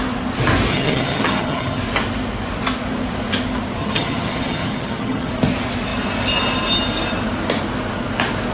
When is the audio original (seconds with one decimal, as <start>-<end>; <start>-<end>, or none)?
0.0-0.7; 1.8-3.8; 5.3-8.5